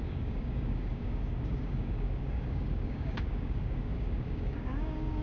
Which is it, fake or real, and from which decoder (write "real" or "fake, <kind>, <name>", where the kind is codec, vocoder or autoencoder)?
fake, codec, DAC